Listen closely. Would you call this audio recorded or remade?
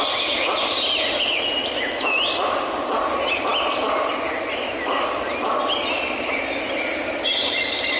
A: recorded